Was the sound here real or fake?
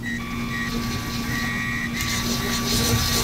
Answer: real